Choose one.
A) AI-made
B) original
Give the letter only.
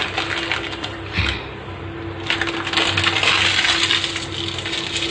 B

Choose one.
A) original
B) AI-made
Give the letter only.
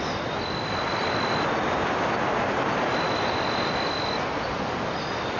A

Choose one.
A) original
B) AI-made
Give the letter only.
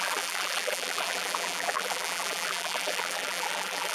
B